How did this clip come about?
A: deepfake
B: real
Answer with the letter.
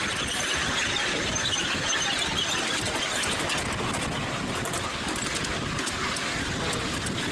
B